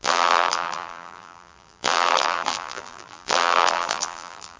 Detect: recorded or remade remade